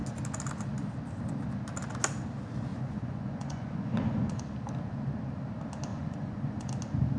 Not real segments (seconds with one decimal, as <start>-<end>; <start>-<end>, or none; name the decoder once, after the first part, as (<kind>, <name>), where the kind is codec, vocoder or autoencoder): 2.7-4.4 (vocoder, Vocos); 5.9-6.7